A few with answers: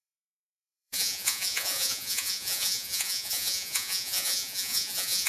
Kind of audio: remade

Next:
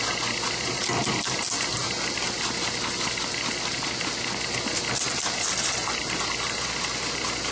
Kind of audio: recorded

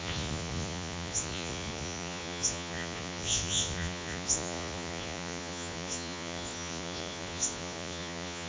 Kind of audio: remade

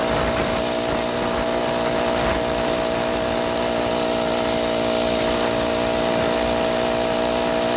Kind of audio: recorded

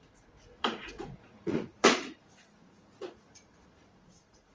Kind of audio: remade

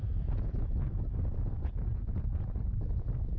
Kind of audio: remade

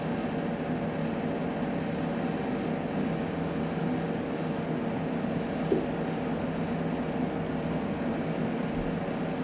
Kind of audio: recorded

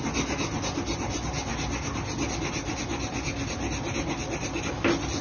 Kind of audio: recorded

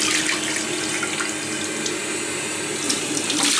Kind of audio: recorded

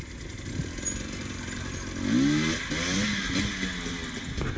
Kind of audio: recorded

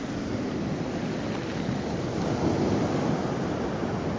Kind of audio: recorded